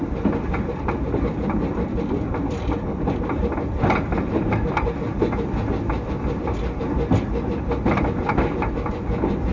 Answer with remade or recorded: recorded